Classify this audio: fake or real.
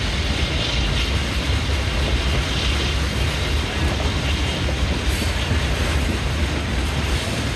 real